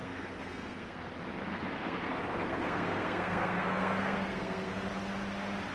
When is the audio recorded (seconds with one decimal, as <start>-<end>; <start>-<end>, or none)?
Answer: 1.1-1.5; 4.9-5.7